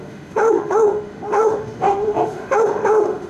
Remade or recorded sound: remade